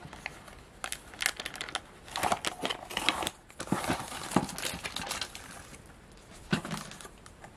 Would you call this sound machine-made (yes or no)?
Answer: no